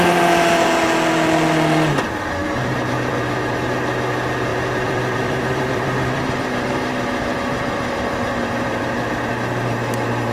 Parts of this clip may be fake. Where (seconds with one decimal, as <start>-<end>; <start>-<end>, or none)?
4.5-8.8